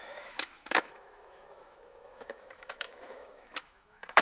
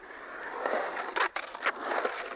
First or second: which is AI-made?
first